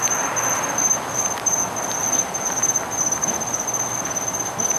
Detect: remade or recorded recorded